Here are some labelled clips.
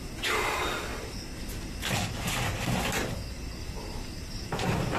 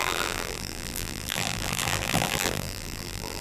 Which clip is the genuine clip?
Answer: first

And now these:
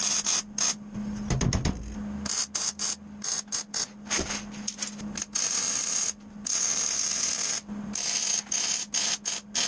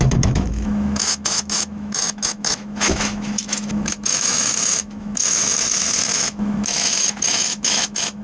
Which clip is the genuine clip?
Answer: first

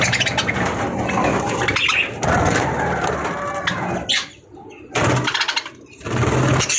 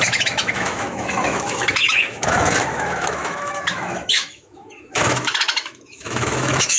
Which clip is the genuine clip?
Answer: first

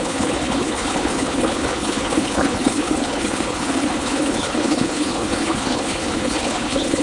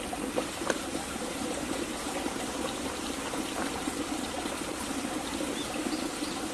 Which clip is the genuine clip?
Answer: second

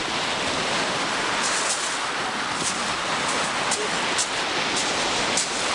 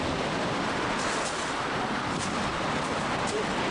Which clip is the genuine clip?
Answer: first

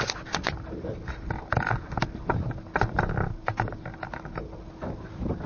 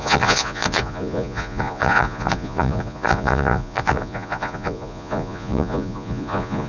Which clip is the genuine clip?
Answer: first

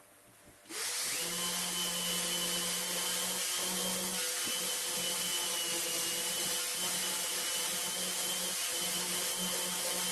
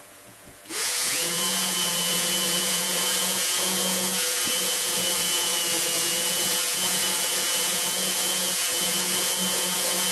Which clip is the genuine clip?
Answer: first